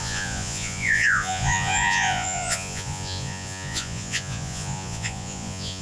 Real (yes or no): no